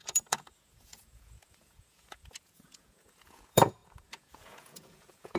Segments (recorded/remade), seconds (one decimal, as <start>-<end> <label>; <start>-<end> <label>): 0.0-5.4 remade